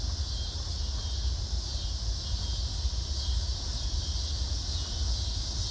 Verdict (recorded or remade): recorded